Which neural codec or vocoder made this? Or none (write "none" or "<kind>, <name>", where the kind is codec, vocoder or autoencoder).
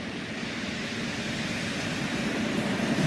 none